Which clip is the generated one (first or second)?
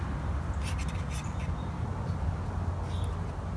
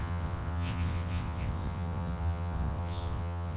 second